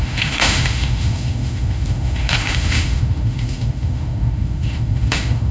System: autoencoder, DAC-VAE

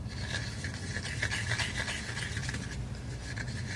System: none